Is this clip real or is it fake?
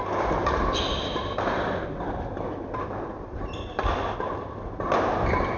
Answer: real